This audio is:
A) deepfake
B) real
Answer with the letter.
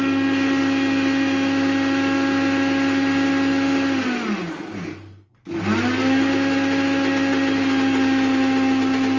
B